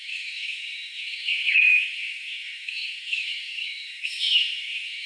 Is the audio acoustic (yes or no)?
no